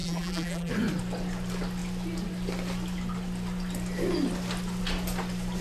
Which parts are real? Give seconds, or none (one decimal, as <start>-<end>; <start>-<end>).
0.7-5.6